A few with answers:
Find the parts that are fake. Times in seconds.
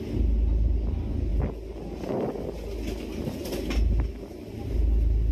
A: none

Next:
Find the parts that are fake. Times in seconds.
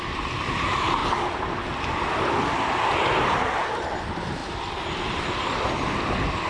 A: 0.0-1.0 (vocoder, BigVGAN v2); 2.3-4.4; 5.2-6.5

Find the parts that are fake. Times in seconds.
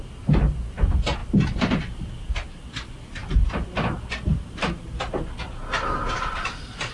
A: none